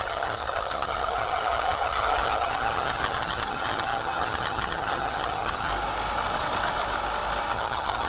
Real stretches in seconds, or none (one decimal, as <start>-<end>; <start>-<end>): 5.7-7.5